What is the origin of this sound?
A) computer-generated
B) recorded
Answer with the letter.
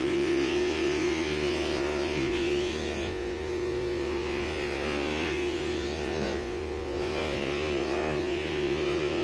A